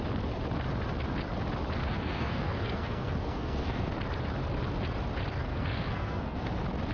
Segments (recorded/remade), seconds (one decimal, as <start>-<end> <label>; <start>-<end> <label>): 0.0-1.8 recorded; 1.8-3.9 remade; 3.9-5.5 recorded; 5.5-6.5 remade; 6.5-6.9 recorded